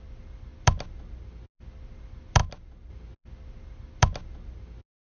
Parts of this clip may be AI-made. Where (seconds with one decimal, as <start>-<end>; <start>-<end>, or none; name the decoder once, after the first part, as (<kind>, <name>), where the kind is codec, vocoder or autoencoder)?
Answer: none